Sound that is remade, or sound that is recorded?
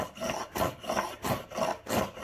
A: recorded